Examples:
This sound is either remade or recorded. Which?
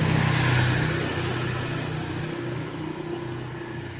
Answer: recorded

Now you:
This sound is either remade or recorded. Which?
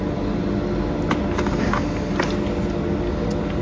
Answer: recorded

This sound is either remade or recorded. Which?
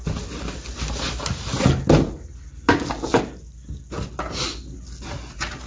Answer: recorded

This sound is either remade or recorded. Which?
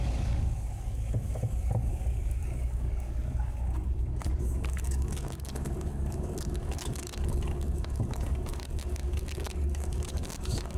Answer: remade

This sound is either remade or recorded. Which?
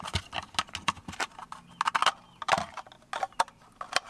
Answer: recorded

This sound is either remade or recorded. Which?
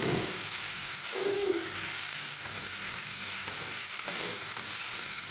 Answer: remade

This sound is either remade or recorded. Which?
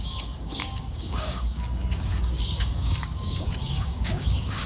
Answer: remade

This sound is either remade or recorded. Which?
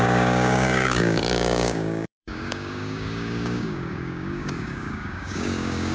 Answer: remade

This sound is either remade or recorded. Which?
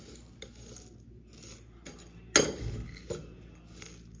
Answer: recorded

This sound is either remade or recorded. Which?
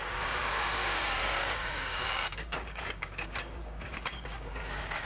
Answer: remade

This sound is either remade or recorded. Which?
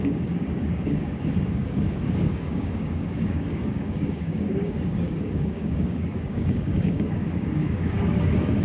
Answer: remade